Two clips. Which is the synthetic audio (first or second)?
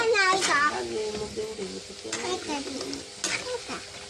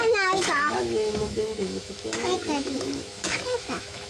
second